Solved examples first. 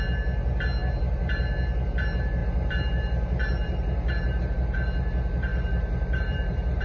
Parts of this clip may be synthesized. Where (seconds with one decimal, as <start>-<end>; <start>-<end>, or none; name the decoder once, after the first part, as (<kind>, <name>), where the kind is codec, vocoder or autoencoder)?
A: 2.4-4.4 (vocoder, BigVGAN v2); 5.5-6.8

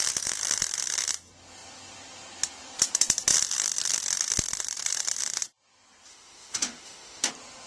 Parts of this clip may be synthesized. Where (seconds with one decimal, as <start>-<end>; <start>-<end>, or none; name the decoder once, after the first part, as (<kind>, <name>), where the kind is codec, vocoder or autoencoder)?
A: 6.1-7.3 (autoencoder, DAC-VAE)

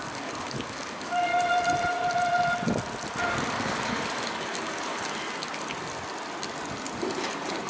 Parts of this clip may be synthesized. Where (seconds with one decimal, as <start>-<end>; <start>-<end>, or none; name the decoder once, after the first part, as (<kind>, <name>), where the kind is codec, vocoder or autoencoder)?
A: 0.0-1.3 (codec, DAC); 3.3-4.9

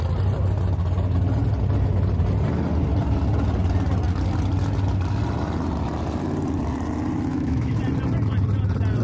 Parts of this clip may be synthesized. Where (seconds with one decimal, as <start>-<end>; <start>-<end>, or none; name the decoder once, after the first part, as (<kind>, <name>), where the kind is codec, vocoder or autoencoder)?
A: 7.3-7.8 (autoencoder, DAC-VAE)

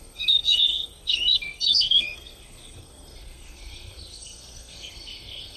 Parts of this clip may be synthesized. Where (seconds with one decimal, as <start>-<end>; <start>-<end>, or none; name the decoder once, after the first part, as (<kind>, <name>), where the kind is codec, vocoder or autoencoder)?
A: 0.0-5.6 (codec, SNAC)

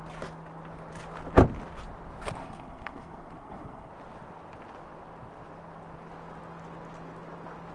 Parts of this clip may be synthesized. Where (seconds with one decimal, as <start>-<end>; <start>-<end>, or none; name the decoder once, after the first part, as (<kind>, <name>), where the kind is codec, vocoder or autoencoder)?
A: 2.4-3.9 (codec, SNAC)